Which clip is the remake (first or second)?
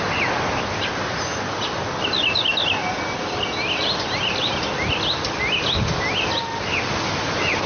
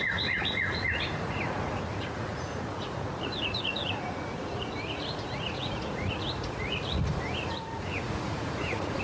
second